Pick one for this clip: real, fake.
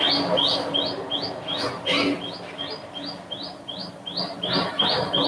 real